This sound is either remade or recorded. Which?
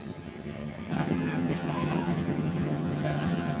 remade